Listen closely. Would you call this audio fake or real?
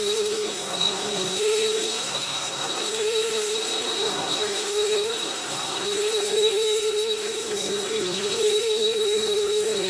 fake